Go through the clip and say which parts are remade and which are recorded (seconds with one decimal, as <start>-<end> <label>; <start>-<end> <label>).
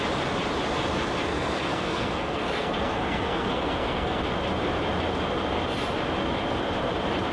0.0-1.3 recorded; 1.3-4.2 remade; 4.2-7.3 recorded